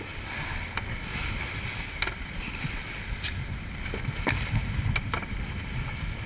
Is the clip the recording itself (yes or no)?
yes